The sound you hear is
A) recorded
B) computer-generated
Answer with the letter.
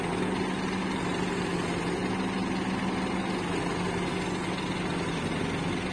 A